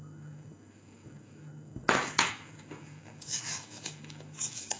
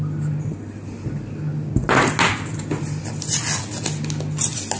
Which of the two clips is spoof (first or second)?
first